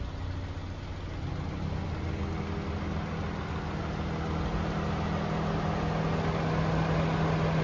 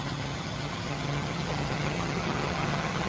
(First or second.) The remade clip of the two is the second